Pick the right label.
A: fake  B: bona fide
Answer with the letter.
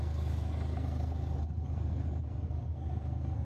A